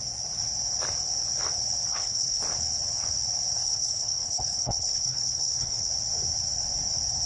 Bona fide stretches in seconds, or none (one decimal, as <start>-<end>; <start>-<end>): 0.0-1.9; 2.4-3.6; 5.9-7.3